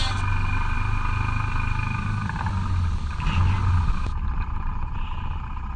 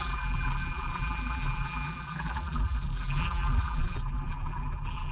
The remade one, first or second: second